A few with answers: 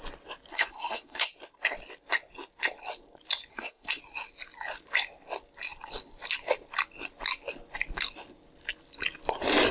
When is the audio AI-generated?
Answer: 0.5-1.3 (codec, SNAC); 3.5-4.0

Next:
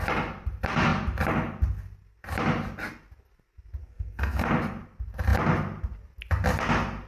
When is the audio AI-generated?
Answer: 3.8-4.5 (codec, SNAC)

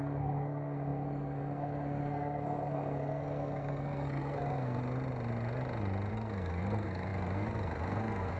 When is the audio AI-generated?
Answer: 0.0-4.8 (codec, SNAC); 6.1-8.4

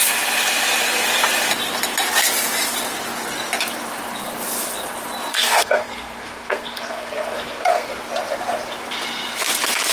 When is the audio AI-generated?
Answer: 5.3-7.9 (codec, SNAC)

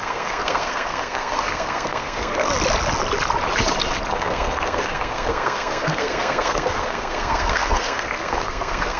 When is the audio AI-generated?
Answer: 0.0-2.5 (codec, SNAC); 4.1-9.0

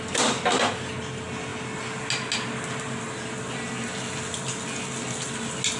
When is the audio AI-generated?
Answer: none

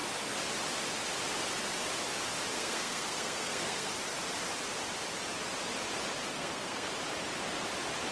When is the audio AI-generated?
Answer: 2.5-3.9 (codec, SNAC); 6.3-6.9

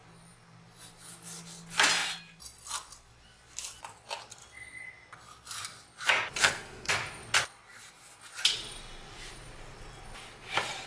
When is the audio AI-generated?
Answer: 6.4-6.9 (codec, SNAC)